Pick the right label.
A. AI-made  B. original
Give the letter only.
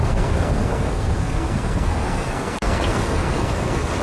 A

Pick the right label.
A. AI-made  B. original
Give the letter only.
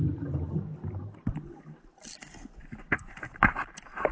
B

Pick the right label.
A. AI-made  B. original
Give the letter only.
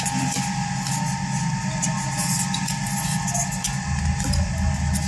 B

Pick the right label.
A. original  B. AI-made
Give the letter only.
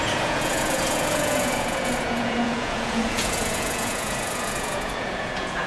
B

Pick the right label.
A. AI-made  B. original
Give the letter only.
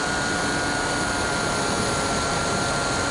B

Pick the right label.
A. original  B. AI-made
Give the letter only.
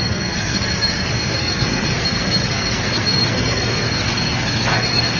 B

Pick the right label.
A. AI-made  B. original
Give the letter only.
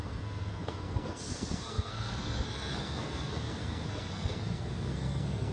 A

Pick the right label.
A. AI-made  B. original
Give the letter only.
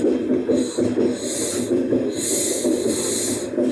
B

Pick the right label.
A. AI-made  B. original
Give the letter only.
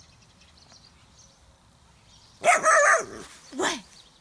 B